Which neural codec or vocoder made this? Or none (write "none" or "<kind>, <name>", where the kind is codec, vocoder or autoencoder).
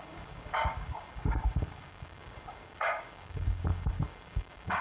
codec, DAC